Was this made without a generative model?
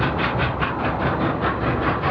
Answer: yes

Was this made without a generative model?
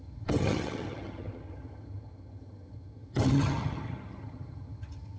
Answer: no